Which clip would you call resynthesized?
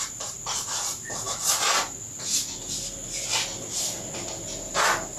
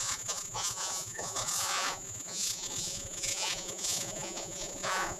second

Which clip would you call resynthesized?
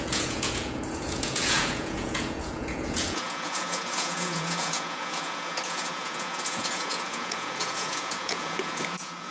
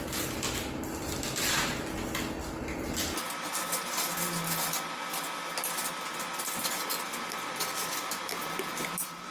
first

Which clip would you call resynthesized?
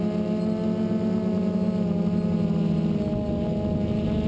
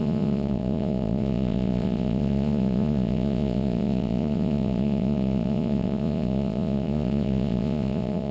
second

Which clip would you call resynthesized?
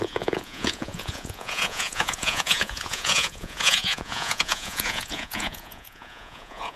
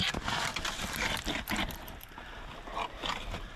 first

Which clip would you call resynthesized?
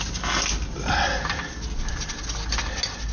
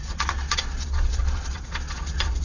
second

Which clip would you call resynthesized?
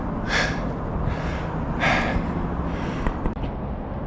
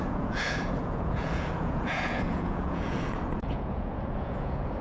second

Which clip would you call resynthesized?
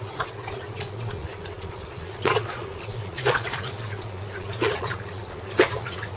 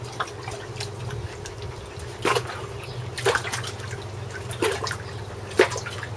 first